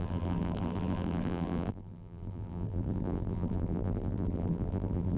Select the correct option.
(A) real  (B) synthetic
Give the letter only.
B